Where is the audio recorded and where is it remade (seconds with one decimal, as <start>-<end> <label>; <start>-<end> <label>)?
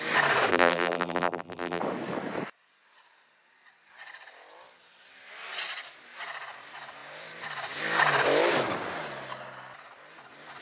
0.0-0.5 recorded; 0.5-1.8 remade; 1.8-10.6 recorded